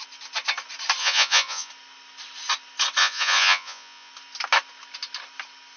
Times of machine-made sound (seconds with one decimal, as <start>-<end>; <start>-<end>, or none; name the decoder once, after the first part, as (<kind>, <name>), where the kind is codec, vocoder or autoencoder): 1.0-1.7 (vocoder, Vocos); 3.0-4.1